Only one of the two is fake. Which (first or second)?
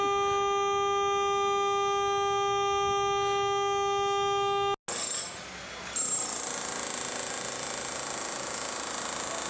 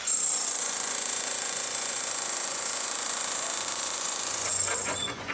second